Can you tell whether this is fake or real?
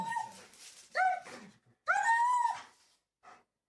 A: real